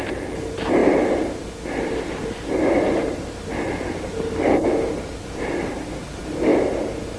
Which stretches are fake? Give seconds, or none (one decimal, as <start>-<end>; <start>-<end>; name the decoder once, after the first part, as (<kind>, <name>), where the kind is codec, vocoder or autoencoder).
none